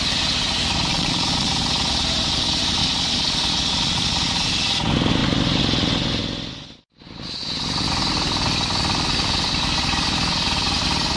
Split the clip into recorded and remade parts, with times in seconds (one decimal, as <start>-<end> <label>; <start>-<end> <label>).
0.0-0.9 recorded; 0.9-1.5 remade; 1.5-2.8 recorded; 2.8-4.5 remade; 4.5-11.2 recorded